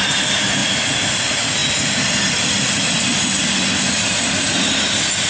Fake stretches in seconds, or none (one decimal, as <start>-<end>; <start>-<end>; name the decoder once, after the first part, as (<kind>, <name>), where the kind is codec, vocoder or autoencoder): none